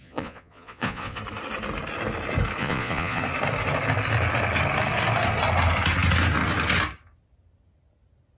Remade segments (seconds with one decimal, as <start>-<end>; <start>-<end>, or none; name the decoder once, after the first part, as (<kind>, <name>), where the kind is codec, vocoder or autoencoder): 0.0-1.2 (vocoder, Vocos); 2.6-3.2